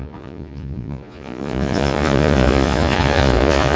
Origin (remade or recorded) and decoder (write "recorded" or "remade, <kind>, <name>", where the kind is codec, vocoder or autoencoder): remade, vocoder, Vocos